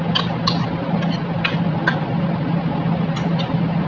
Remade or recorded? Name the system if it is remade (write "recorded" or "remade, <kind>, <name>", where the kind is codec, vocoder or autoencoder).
recorded